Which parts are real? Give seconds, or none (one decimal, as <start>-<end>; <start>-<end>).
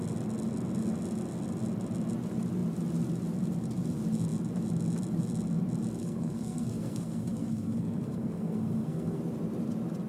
0.0-6.0; 9.2-10.1